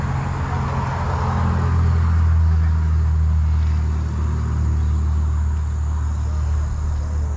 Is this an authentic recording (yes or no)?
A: yes